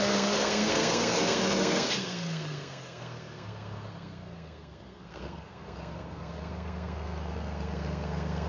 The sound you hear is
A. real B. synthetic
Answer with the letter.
B